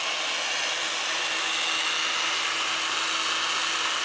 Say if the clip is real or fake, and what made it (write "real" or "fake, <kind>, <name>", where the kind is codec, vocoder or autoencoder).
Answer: real